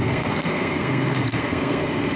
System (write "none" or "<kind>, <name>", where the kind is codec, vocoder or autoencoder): codec, SNAC